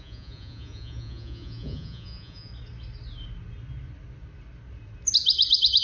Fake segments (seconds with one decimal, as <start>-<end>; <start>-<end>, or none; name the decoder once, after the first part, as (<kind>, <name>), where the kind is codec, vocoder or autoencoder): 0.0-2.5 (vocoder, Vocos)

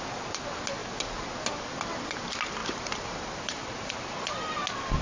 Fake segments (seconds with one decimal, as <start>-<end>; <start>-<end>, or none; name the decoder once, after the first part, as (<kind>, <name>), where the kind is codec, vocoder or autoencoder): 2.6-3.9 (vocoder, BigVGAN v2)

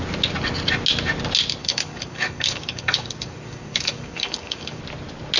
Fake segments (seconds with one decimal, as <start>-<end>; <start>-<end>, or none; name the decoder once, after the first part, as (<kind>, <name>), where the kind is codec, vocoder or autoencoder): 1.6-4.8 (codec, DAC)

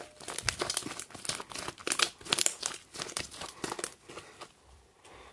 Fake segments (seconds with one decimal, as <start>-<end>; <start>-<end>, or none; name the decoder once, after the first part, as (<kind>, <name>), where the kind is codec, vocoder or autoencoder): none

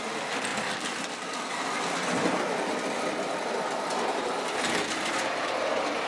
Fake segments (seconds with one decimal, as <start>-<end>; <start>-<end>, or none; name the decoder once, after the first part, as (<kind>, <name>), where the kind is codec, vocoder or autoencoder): none

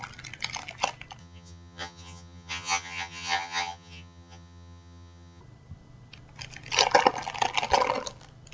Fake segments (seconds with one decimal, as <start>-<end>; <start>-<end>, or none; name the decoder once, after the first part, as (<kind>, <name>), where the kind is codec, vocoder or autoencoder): 1.2-5.4 (vocoder, HiFi-GAN)